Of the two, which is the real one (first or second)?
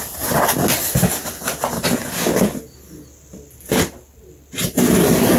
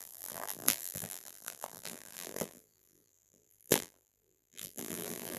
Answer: first